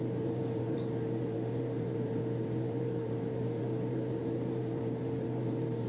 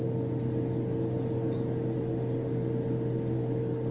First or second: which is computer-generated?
first